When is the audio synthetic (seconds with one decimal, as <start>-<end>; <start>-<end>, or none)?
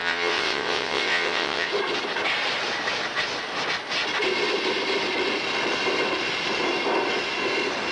0.0-1.7